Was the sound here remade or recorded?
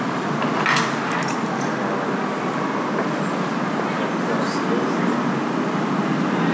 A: recorded